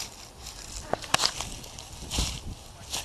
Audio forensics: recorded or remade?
recorded